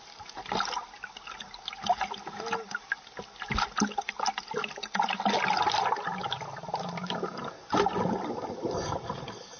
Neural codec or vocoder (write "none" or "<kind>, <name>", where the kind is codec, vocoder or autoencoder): none